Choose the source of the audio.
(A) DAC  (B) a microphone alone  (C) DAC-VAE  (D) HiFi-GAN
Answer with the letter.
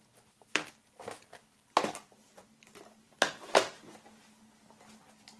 B